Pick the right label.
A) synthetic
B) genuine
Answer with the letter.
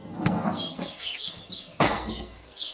A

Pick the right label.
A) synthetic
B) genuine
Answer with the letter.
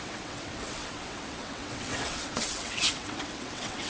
A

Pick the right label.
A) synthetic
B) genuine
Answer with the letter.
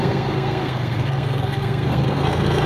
A